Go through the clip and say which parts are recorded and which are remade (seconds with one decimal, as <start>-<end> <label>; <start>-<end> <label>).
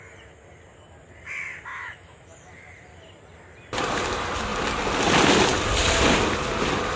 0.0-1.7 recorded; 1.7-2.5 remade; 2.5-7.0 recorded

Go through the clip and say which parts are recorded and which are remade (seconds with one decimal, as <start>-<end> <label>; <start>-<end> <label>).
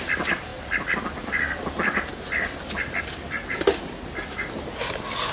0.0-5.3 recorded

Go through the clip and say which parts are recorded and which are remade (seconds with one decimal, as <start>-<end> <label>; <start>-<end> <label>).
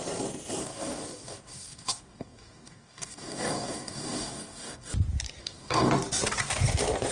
0.0-0.6 recorded; 0.6-4.9 remade; 4.9-5.4 recorded; 5.4-5.9 remade; 5.9-7.1 recorded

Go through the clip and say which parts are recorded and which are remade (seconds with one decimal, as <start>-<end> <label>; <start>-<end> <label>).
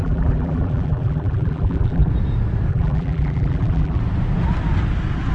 0.0-2.1 remade; 2.1-2.7 recorded; 2.7-4.0 remade; 4.0-5.3 recorded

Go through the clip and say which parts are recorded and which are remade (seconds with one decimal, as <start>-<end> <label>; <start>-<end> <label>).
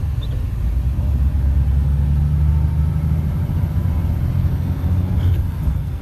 0.0-4.4 recorded; 4.4-6.0 remade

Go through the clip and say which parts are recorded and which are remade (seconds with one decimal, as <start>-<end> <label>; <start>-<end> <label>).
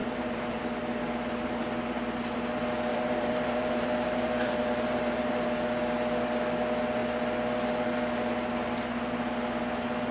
0.0-0.6 remade; 0.6-2.9 recorded; 2.9-5.3 remade; 5.3-10.1 recorded